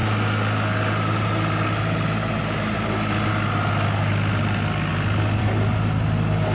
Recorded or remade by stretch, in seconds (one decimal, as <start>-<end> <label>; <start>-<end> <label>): 0.0-6.5 recorded